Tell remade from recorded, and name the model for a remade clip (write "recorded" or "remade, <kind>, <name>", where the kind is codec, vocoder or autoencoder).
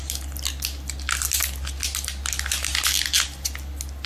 recorded